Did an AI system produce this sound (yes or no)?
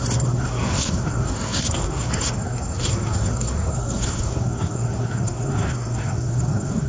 yes